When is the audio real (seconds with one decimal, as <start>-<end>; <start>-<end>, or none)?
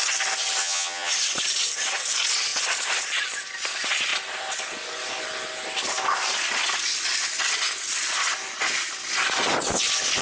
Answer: 0.0-0.6; 1.1-10.2